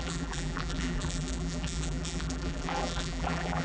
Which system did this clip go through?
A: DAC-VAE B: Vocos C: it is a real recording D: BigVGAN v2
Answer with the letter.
D